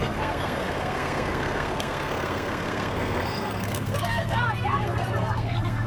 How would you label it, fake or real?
fake